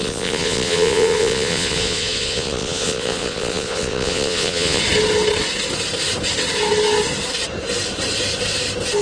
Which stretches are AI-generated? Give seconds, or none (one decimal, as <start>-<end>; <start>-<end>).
0.0-4.8